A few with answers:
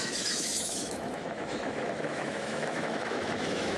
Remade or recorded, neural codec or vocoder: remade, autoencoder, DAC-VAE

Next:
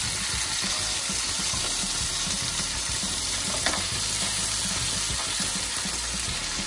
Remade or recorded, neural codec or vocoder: recorded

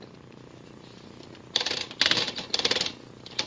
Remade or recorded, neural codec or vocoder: recorded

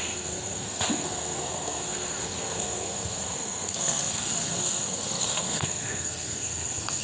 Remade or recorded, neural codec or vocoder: remade, codec, SNAC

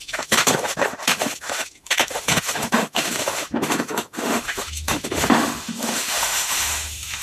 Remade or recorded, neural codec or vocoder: remade, autoencoder, DAC-VAE